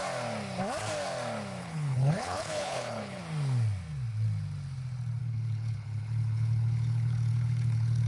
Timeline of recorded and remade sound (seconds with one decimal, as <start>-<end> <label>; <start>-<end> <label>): 0.0-1.6 recorded; 1.6-3.2 remade; 3.2-5.2 recorded; 5.2-8.1 remade